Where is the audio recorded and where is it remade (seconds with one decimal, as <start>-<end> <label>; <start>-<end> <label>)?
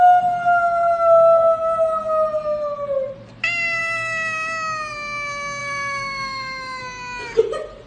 0.0-5.6 recorded; 5.6-6.8 remade; 6.8-7.9 recorded